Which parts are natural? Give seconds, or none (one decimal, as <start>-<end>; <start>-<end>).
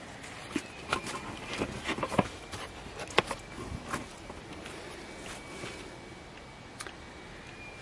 0.0-0.4; 2.8-7.8